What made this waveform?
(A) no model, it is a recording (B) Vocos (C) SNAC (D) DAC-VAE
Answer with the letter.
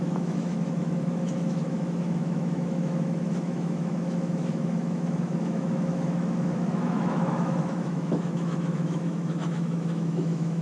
D